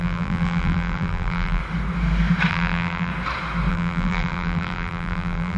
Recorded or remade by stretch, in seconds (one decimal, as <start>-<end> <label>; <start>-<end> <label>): 0.0-1.6 remade; 1.6-2.5 recorded; 2.5-3.1 remade; 3.1-3.7 recorded; 3.7-5.6 remade